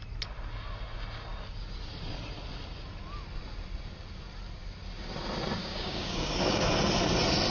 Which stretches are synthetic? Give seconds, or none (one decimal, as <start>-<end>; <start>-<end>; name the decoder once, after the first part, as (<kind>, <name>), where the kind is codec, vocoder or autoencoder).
5.6-6.7 (codec, DAC)